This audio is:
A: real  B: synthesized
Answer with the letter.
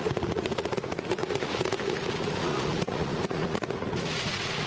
B